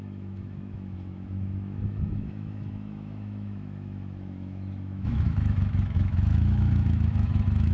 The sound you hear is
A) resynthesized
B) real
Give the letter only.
A